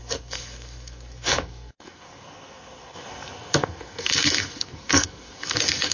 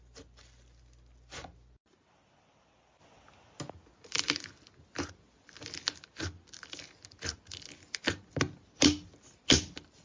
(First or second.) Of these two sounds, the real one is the second